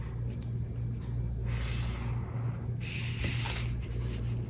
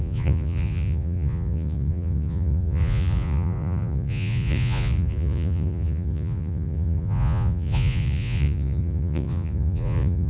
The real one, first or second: first